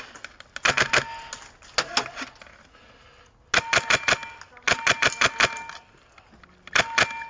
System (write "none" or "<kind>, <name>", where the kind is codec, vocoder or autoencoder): none